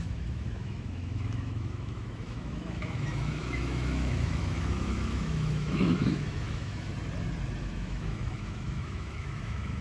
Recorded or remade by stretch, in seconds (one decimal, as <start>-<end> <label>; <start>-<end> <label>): 0.0-6.9 remade; 6.9-7.6 recorded; 7.6-9.8 remade